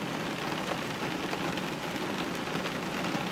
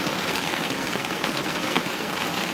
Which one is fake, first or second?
second